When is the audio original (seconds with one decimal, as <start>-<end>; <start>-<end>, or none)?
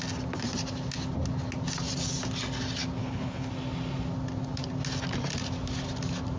0.0-3.0; 3.5-6.4